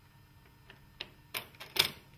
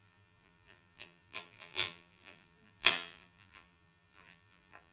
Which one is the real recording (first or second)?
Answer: first